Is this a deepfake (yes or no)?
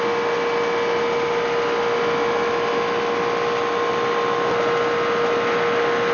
no